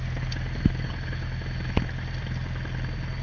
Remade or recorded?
recorded